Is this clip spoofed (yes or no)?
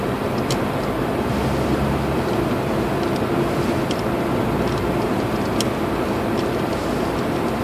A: no